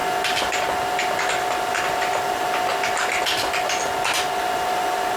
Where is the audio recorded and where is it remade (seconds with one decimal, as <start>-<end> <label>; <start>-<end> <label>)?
0.0-5.2 recorded